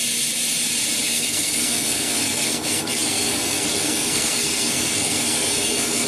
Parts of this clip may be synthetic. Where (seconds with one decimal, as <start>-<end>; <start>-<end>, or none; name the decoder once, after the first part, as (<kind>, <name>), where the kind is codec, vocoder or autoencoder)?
1.0-6.1 (codec, SNAC)